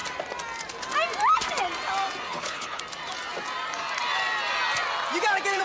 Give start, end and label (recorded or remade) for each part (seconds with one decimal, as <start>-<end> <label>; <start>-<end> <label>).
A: 0.0-2.3 recorded; 2.3-2.8 remade; 2.8-5.6 recorded